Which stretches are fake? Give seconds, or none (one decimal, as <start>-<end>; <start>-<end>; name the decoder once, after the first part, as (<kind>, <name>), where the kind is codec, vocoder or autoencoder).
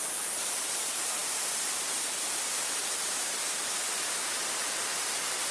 0.0-5.5 (vocoder, BigVGAN v2)